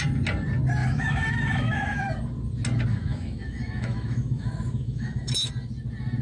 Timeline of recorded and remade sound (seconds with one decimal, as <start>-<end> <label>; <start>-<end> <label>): 0.0-0.8 recorded; 0.8-2.0 remade; 2.0-2.9 recorded; 2.9-5.5 remade; 5.5-6.2 recorded